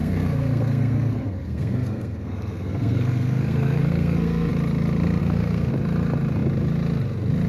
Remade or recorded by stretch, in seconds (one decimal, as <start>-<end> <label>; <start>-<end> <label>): 0.0-4.5 remade; 4.5-5.2 recorded; 5.2-5.7 remade; 5.7-7.5 recorded